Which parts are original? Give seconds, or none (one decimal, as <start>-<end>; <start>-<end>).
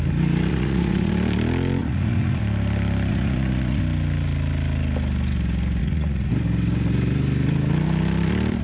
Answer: 0.0-0.5; 1.1-1.8; 2.4-3.1; 3.8-5.8; 6.3-8.6